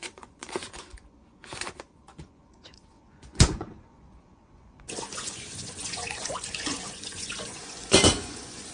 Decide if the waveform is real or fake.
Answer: fake